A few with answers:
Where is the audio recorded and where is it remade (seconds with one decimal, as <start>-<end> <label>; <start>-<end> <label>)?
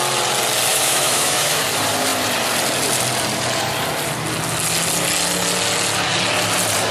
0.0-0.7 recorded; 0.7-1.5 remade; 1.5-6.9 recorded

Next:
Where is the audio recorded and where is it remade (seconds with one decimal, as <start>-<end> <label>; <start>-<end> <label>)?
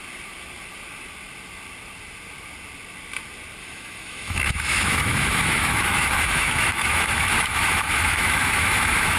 0.0-3.6 recorded; 3.6-9.2 remade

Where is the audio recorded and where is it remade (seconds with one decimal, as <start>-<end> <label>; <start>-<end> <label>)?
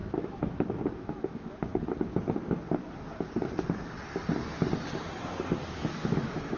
0.0-1.7 remade; 1.7-5.7 recorded; 5.7-6.6 remade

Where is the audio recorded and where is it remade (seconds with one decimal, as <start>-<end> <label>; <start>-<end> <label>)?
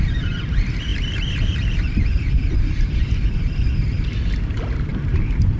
0.0-5.6 recorded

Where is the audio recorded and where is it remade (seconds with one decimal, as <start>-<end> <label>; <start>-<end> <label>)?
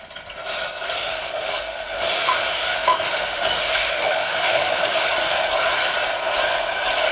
0.0-1.0 recorded; 1.0-5.1 remade; 5.1-7.1 recorded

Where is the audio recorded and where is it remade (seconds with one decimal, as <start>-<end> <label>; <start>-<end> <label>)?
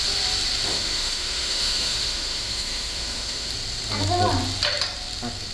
0.0-0.7 recorded; 0.7-3.5 remade; 3.5-5.5 recorded